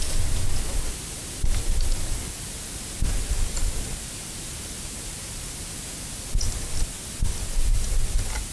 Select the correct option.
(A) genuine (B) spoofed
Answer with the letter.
A